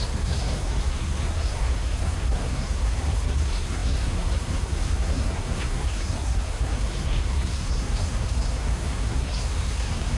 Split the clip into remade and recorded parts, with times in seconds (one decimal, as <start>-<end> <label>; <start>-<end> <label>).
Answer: 0.0-10.2 remade